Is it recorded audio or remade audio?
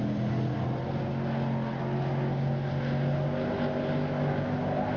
recorded